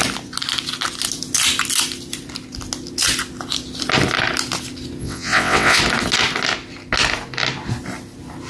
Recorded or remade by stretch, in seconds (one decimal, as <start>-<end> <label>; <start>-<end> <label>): 0.0-5.0 recorded; 5.0-5.8 remade; 5.8-8.5 recorded

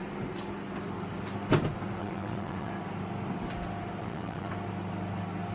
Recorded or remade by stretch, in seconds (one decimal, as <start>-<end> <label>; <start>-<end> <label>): 0.0-2.0 recorded; 2.0-2.7 remade; 2.7-4.0 recorded; 4.0-4.5 remade; 4.5-5.5 recorded

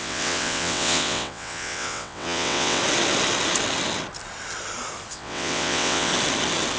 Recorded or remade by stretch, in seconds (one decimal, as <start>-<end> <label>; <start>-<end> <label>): 0.0-2.8 remade; 2.8-5.1 recorded; 5.1-6.1 remade; 6.1-6.8 recorded

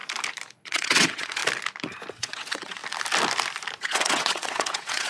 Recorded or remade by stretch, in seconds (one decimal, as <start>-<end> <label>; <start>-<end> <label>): 0.0-0.5 recorded; 0.5-1.4 remade; 1.4-2.1 recorded; 2.1-2.8 remade; 2.8-3.8 recorded; 3.8-5.1 remade

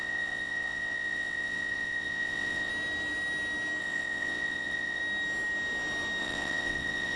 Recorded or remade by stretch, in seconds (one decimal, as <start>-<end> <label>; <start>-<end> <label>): 0.0-2.7 remade; 2.7-3.8 recorded; 3.8-5.0 remade; 5.0-6.2 recorded; 6.2-7.2 remade

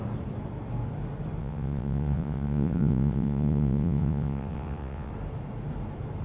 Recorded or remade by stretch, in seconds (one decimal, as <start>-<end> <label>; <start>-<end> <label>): 0.0-1.4 recorded; 1.4-5.1 remade; 5.1-6.2 recorded